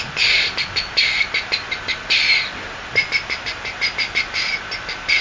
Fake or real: real